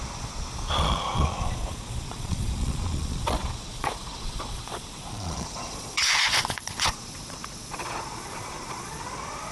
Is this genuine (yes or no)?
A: no